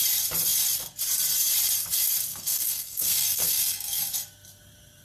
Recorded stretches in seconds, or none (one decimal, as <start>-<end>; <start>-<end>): 0.0-2.3; 4.0-5.0

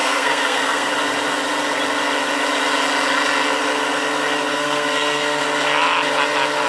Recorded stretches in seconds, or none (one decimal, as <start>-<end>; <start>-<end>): 0.9-4.5; 5.4-6.7

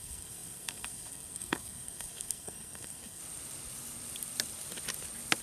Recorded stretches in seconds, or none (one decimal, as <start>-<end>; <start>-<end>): 3.2-5.4

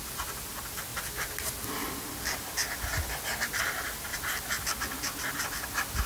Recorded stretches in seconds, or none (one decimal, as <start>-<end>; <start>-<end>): 0.0-6.1

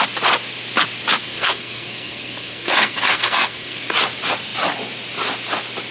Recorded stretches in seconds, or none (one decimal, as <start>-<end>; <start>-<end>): 0.0-1.2; 3.8-5.9

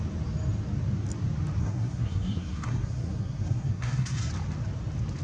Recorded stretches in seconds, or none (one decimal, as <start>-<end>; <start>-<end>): 0.0-1.6; 4.3-5.2